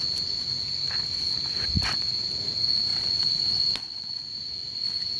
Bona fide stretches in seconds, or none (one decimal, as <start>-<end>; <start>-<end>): 0.0-5.2